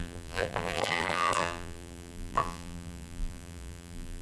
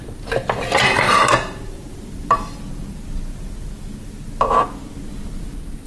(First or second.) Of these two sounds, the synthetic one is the first